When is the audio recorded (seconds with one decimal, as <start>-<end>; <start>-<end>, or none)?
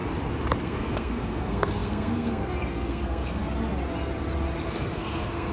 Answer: 0.0-0.6; 3.4-4.6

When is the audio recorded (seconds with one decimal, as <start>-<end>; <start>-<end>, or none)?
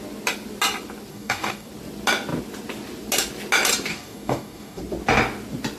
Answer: 0.0-1.1; 1.7-3.9; 4.8-5.8